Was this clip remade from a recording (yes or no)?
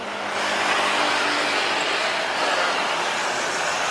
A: no